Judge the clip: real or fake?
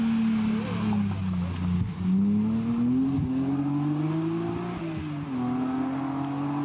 real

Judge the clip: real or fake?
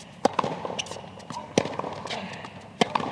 real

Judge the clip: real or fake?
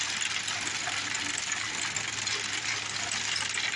real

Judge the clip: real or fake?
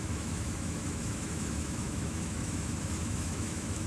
fake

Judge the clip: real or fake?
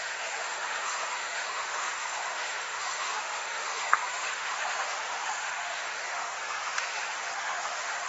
fake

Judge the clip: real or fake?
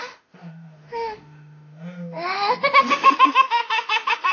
fake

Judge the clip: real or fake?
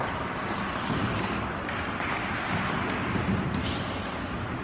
real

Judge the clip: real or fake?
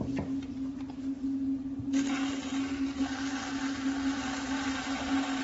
real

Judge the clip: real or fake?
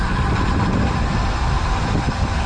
real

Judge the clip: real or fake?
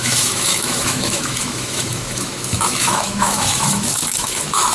fake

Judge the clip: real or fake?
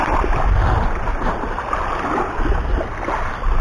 real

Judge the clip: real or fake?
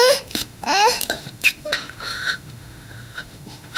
fake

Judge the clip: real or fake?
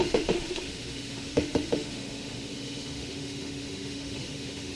fake